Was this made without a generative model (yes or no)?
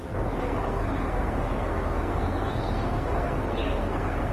no